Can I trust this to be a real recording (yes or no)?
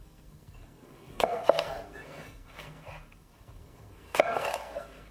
no